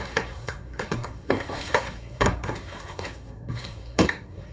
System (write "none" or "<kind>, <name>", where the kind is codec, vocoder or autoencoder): codec, SNAC